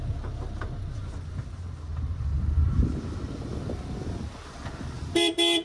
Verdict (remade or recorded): recorded